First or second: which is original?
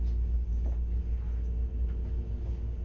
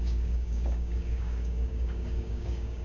first